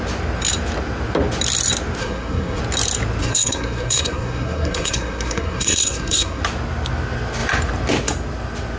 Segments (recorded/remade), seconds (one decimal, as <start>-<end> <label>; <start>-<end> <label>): 0.0-2.0 recorded; 2.0-2.6 remade; 2.6-3.2 recorded; 3.2-6.4 remade; 6.4-8.8 recorded